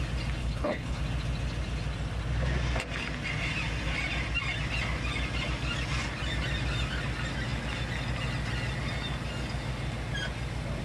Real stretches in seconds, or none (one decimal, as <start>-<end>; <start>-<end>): 0.0-0.4; 1.0-10.8

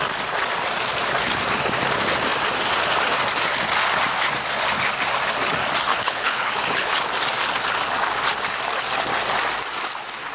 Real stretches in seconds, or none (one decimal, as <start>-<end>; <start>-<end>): 0.0-5.9; 7.0-10.3